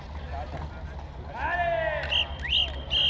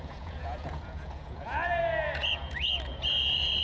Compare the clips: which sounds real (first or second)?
first